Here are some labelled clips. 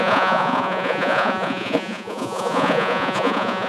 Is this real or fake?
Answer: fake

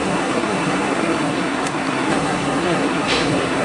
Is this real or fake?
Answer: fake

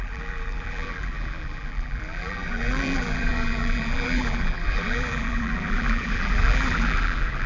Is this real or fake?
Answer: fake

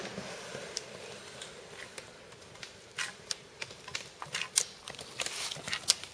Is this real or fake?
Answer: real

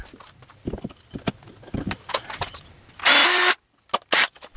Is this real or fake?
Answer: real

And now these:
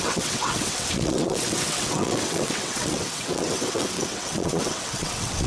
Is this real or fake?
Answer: fake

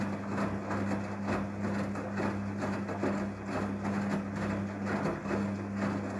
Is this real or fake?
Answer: real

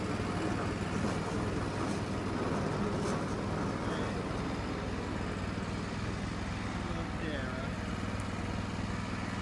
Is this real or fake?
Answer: real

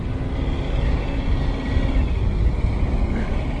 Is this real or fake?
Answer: real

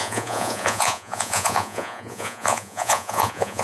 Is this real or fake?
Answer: fake